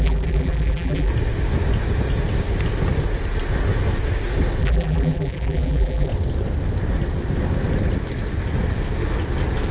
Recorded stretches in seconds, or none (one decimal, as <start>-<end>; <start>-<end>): 1.1-4.6; 6.1-9.7